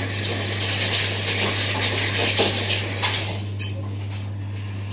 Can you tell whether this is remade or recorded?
recorded